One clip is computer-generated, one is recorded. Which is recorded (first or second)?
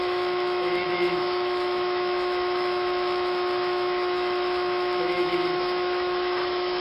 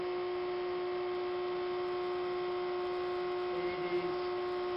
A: second